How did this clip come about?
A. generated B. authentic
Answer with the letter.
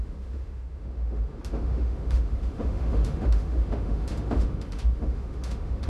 A